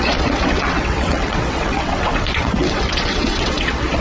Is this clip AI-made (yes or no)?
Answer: yes